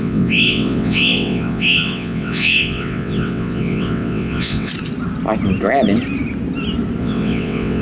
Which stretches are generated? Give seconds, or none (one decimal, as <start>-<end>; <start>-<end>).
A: 0.0-4.7; 7.0-7.8